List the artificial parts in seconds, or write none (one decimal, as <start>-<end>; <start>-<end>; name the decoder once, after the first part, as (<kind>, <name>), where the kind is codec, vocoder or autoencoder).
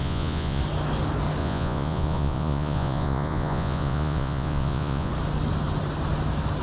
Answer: 0.0-0.6 (vocoder, Vocos); 1.4-5.1